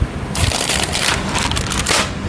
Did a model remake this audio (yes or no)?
no